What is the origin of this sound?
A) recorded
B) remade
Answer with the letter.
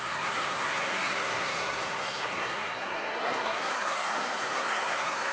B